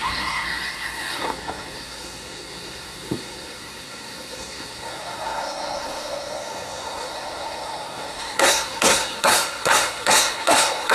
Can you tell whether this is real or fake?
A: fake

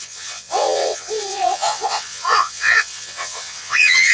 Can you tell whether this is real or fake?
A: fake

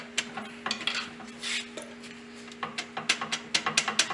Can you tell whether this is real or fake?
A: real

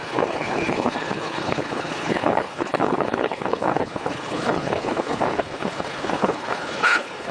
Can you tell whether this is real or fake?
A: fake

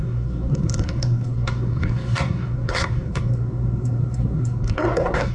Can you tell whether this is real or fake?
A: fake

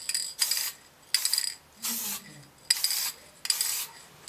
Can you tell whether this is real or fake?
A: real